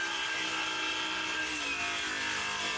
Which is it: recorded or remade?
recorded